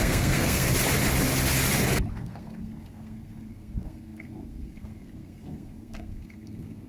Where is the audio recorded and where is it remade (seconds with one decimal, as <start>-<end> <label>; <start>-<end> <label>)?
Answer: 0.0-0.7 remade; 0.7-2.1 recorded; 2.1-6.9 remade

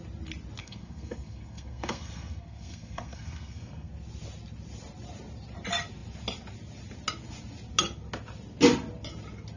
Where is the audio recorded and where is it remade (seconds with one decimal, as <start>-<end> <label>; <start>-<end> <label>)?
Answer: 0.0-0.6 recorded; 0.6-3.9 remade; 3.9-9.6 recorded

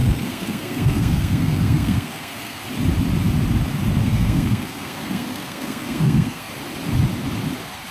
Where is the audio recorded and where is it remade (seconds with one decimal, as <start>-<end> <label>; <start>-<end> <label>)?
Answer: 0.0-2.6 remade; 2.6-4.0 recorded; 4.0-6.5 remade; 6.5-7.9 recorded